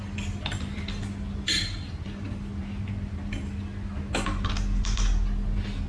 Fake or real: real